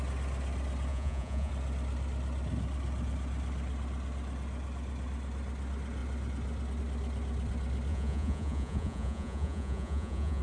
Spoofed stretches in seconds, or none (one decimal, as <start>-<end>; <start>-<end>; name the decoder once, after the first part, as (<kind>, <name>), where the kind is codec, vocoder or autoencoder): 0.9-1.5 (vocoder, Vocos); 7.9-10.4